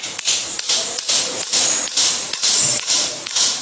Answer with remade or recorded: remade